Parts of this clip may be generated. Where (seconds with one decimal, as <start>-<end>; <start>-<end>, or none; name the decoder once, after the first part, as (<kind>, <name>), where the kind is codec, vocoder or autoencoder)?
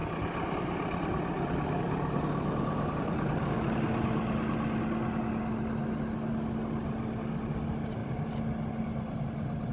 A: none